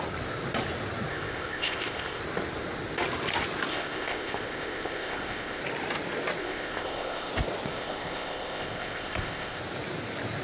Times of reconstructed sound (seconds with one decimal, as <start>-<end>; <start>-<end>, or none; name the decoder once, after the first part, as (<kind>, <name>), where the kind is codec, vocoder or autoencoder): 1.1-2.2 (codec, ZipCodec); 3.7-5.6; 6.4-7.3; 7.7-9.6